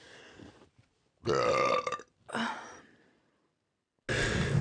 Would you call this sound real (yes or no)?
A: yes